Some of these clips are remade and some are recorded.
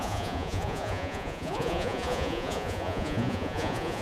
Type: remade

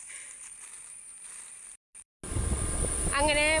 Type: recorded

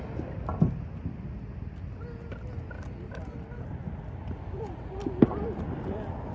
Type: recorded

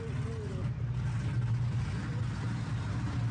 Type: recorded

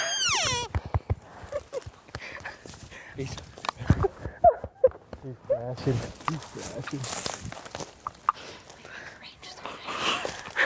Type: recorded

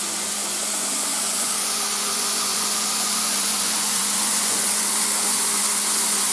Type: remade